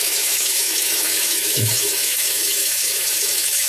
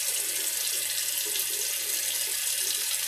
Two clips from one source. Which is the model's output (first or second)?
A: first